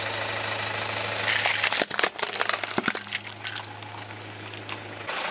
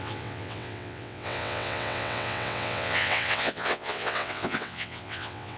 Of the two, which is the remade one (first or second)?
second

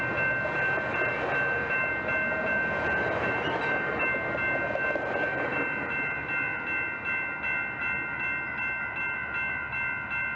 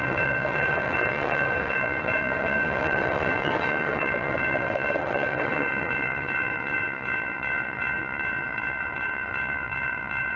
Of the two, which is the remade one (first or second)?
second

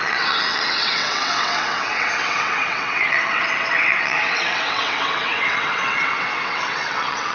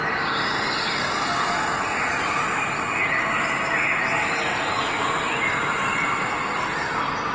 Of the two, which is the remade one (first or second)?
first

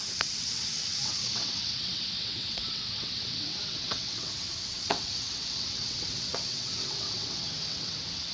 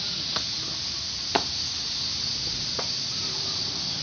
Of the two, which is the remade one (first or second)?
first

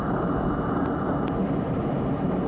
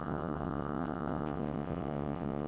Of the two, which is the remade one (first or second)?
second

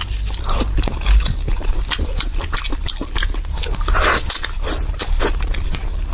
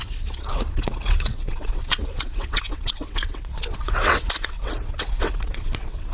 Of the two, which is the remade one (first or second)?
second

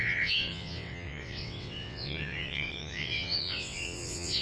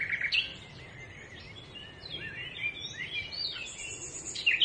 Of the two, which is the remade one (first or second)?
first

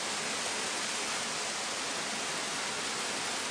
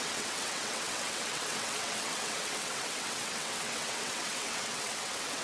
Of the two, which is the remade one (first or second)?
second